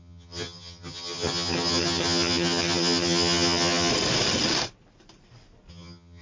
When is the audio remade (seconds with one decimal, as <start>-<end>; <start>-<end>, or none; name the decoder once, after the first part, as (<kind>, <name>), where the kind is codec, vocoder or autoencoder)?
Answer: 0.0-3.9 (vocoder, HiFi-GAN); 5.7-6.2